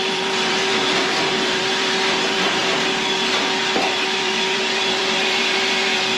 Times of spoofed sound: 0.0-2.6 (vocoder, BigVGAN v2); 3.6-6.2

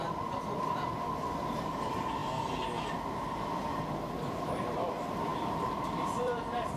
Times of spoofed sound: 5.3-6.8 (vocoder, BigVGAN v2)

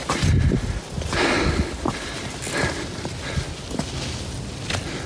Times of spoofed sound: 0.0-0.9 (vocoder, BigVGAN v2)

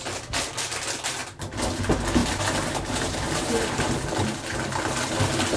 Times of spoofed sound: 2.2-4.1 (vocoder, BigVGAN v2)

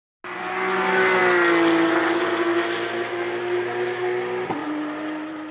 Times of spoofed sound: 4.6-5.5 (vocoder, BigVGAN v2)